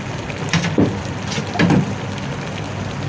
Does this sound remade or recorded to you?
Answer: recorded